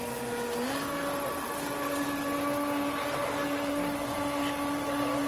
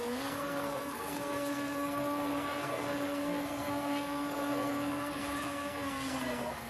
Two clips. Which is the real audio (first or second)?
first